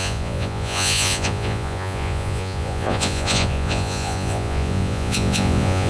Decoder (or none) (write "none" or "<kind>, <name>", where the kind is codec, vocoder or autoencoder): vocoder, Vocos